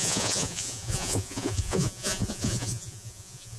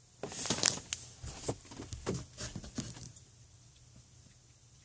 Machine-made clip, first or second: first